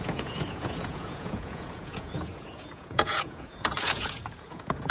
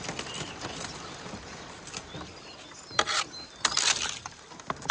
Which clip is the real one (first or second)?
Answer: second